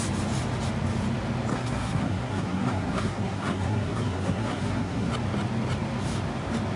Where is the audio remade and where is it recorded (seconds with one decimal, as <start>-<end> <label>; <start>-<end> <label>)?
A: 0.0-1.5 recorded; 1.5-5.1 remade; 5.1-6.8 recorded